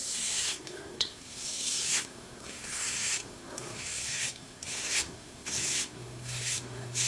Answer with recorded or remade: remade